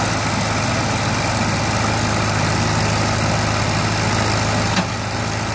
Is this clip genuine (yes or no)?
yes